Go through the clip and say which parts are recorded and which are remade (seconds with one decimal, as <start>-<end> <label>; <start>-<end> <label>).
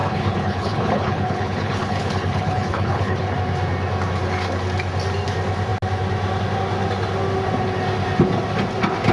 0.0-3.3 remade; 3.3-9.1 recorded